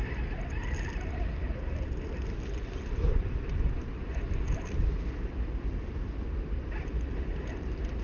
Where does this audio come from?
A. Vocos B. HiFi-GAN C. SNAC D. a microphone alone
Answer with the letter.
D